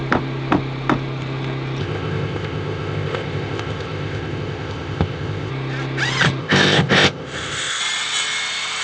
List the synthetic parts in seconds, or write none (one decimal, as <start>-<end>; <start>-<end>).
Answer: 1.8-5.5; 6.4-7.8

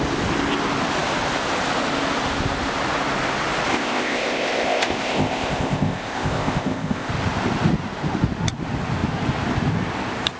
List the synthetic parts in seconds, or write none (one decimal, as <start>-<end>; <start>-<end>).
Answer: 3.7-7.1

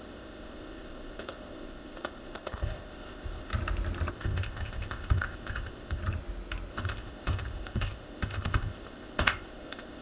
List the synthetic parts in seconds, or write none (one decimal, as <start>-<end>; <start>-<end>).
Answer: 0.0-3.5; 4.1-6.0; 6.7-10.0